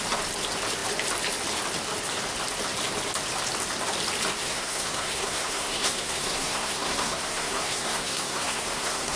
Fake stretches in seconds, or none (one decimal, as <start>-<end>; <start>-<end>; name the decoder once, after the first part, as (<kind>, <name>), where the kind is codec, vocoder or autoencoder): 4.4-9.2 (codec, SNAC)